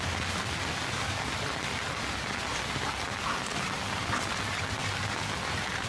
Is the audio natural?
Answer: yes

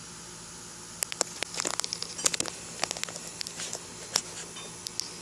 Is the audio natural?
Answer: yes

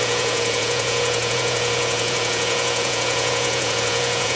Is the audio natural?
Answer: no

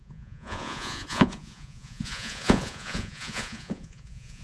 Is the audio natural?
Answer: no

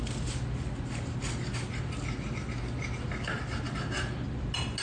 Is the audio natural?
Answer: yes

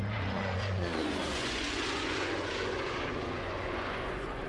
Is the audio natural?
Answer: no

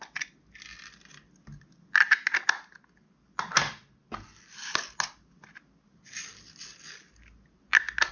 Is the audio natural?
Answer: yes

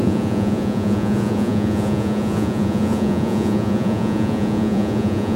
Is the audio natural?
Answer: no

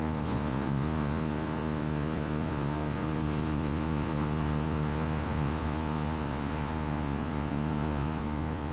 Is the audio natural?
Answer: no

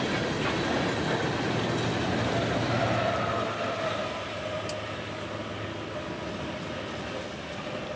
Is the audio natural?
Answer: yes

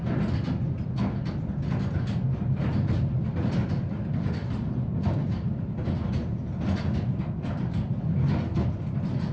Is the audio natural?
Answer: yes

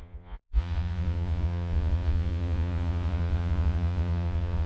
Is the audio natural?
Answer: no